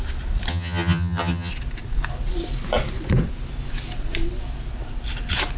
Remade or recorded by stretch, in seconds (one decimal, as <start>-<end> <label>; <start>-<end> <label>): 0.0-0.5 recorded; 0.5-1.5 remade; 1.5-5.6 recorded